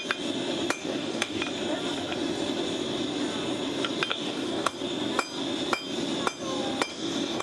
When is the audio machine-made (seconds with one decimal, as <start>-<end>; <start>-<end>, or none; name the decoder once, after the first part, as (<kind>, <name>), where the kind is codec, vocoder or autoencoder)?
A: 0.8-1.4 (codec, DAC); 4.1-4.7; 6.9-7.4